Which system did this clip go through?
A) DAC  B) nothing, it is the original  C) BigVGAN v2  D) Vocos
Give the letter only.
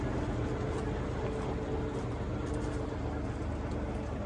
B